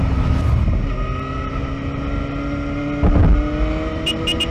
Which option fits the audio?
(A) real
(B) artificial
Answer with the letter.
A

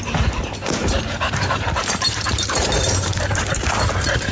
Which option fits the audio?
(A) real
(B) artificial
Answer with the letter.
B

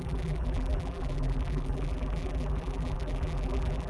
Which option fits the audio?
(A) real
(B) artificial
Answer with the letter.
B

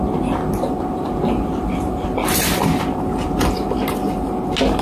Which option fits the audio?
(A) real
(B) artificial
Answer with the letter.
A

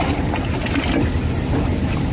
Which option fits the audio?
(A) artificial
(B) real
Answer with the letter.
B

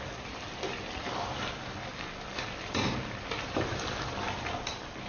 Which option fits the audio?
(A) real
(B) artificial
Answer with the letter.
B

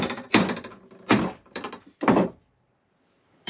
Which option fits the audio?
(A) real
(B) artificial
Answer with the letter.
B